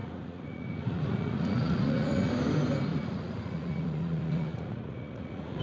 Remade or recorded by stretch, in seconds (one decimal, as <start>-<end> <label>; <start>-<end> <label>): 0.0-2.3 remade; 2.3-2.9 recorded; 2.9-5.6 remade